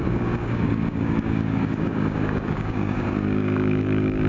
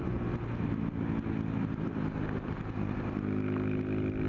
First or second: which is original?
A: second